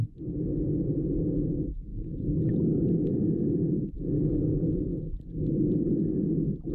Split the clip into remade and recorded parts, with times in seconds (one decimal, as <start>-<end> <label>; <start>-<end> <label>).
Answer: 0.0-6.7 recorded